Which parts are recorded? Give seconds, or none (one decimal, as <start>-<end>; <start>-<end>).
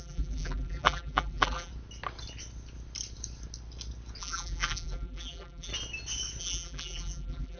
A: 1.7-4.2; 5.7-6.4